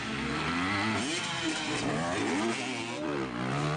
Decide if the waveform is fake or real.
real